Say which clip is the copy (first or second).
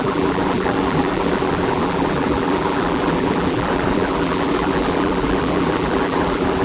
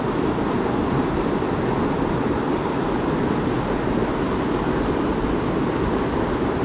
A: first